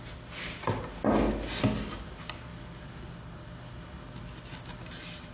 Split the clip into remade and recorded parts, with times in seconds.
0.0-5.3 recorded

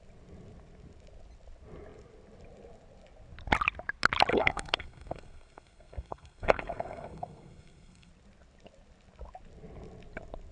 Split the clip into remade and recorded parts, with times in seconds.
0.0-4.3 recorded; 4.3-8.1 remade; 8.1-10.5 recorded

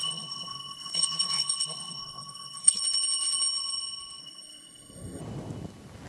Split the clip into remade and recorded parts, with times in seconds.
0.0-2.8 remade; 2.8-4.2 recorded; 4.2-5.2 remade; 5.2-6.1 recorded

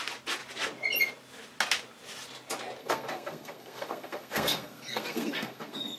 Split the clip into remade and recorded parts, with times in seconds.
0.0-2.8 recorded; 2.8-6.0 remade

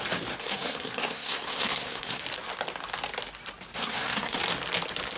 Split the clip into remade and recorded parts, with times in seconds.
0.0-0.4 recorded; 0.4-2.2 remade; 2.2-3.8 recorded; 3.8-4.4 remade; 4.4-5.2 recorded

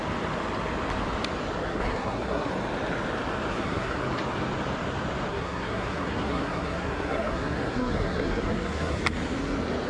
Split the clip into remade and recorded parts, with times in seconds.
0.0-1.7 recorded; 1.7-2.5 remade; 2.5-3.5 recorded; 3.5-4.0 remade; 4.0-5.3 recorded; 5.3-9.0 remade; 9.0-9.9 recorded

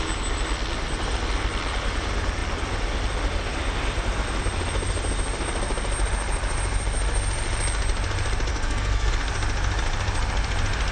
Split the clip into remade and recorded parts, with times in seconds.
0.0-8.5 recorded; 8.5-9.1 remade; 9.1-10.9 recorded

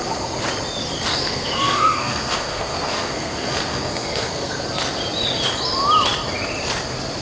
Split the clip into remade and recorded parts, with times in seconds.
0.0-1.1 recorded; 1.1-4.6 remade; 4.6-7.2 recorded